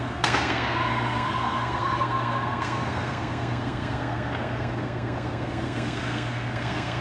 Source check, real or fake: fake